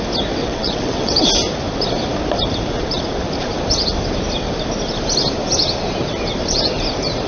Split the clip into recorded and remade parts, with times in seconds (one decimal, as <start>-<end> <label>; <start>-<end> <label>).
0.0-0.4 recorded; 0.4-1.2 remade; 1.2-7.3 recorded

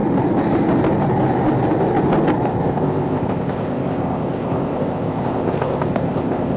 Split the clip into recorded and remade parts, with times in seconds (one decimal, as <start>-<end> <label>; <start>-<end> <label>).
0.0-2.5 recorded; 2.5-6.6 remade

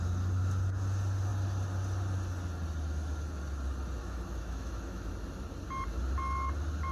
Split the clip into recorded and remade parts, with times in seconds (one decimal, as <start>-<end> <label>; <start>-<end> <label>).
0.0-4.0 recorded; 4.0-5.1 remade; 5.1-6.9 recorded

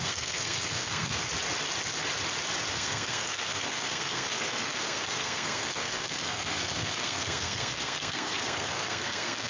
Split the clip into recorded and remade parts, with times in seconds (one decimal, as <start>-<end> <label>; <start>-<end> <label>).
0.0-1.3 remade; 1.3-2.7 recorded; 2.7-9.5 remade